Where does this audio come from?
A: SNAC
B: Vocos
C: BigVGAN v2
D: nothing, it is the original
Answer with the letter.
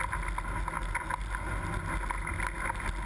D